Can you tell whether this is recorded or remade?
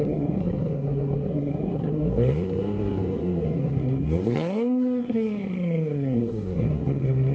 remade